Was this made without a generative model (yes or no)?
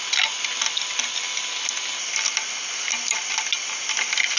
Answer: yes